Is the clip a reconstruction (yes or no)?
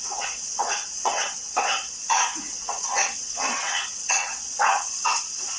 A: yes